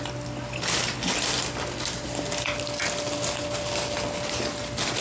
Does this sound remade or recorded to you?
recorded